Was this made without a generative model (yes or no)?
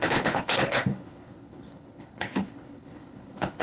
no